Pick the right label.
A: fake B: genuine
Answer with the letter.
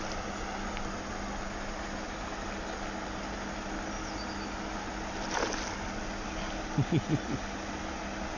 B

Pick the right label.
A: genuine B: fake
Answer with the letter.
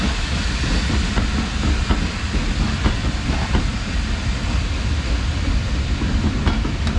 A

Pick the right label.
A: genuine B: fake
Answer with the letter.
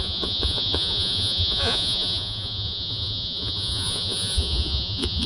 B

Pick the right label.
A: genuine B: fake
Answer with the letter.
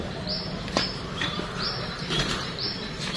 B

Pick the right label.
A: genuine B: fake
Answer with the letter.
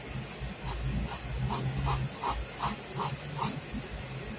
A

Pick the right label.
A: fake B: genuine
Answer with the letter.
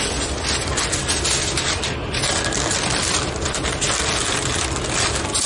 B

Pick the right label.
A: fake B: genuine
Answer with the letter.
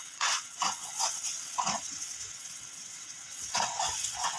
A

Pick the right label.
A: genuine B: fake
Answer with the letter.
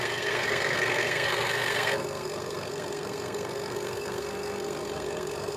B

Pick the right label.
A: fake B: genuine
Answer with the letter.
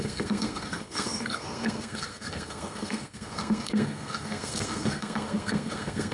A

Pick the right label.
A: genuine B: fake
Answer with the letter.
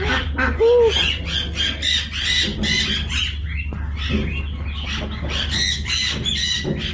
A